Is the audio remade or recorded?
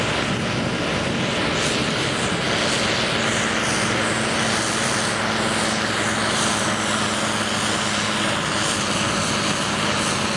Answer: recorded